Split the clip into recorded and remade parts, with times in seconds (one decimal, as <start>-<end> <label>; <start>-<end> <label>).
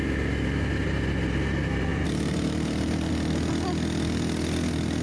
0.0-1.9 recorded; 1.9-3.1 remade; 3.1-5.0 recorded